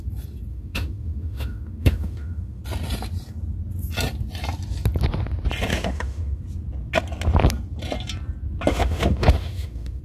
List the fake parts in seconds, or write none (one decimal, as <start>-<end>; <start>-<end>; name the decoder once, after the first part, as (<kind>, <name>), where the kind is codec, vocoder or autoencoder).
0.5-2.6 (autoencoder, DAC-VAE); 5.7-6.4; 8.7-10.0

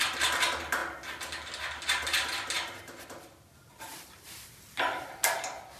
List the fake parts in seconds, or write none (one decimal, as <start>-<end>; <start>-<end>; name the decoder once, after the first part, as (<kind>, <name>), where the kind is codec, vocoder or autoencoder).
none

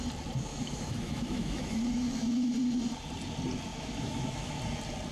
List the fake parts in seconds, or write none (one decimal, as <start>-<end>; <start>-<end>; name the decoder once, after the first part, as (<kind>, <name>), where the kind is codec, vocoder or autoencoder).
0.5-2.5 (autoencoder, DAC-VAE); 3.7-4.6

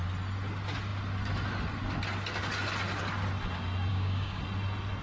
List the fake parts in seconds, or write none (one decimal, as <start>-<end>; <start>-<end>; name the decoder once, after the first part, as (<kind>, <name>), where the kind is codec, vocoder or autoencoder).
3.9-4.4 (codec, DAC)

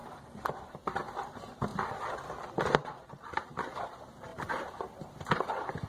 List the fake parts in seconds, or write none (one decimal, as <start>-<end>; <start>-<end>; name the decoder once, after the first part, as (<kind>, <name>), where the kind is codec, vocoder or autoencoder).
0.0-1.0 (vocoder, BigVGAN v2); 4.3-5.5

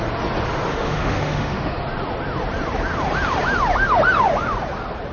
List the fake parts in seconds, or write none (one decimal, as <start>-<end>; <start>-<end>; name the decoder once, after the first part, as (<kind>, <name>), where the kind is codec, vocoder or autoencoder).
0.7-1.8 (autoencoder, DAC-VAE)

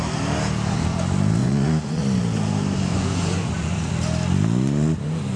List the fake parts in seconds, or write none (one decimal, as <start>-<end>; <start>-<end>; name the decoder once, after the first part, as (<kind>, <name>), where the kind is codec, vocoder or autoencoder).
1.4-2.0 (vocoder, Vocos); 2.9-3.9